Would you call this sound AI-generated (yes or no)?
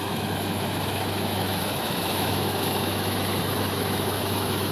yes